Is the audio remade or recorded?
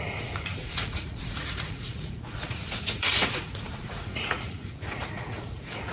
remade